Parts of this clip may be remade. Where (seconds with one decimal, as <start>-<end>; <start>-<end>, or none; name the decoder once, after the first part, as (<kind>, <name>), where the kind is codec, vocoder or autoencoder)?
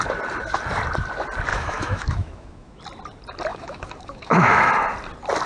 1.5-2.8 (autoencoder, DAC-VAE); 3.5-4.7